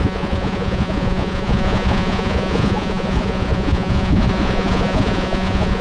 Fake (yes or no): yes